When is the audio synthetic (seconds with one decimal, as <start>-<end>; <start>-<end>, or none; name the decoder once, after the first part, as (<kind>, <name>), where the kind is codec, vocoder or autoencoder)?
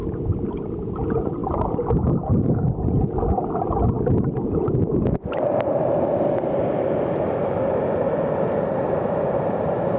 none